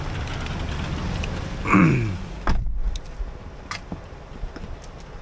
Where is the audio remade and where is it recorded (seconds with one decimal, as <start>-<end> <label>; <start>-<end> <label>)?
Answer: 0.0-5.2 recorded